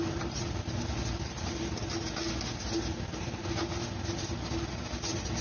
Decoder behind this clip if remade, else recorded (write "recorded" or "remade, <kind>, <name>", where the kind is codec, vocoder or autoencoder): recorded